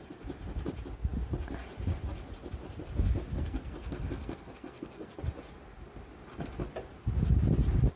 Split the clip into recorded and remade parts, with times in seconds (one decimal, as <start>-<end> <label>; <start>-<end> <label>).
0.0-3.3 recorded; 3.3-5.2 remade; 5.2-8.0 recorded